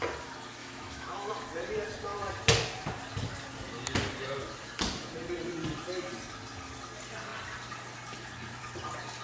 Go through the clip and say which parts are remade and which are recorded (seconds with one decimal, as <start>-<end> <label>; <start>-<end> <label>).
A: 0.0-0.6 recorded; 0.6-1.3 remade; 1.3-9.2 recorded